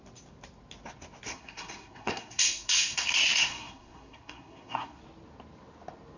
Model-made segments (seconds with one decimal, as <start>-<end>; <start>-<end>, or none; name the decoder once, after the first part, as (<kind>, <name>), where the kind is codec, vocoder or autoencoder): 1.3-5.0 (codec, SNAC)